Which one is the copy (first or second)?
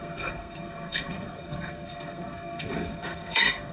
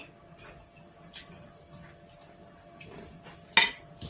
first